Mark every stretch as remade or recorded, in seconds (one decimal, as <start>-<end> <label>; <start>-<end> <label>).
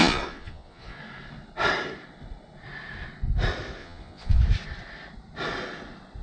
0.0-1.0 remade; 1.0-3.8 recorded; 3.8-4.4 remade; 4.4-6.2 recorded